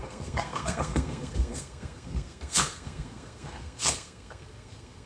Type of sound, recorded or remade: remade